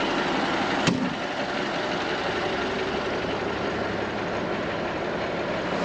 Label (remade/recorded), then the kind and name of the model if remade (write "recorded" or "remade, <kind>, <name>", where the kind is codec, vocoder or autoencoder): recorded